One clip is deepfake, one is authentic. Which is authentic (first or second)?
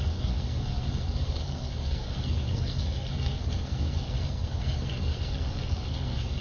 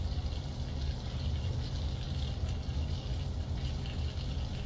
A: second